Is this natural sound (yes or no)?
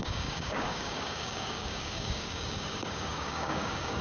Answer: no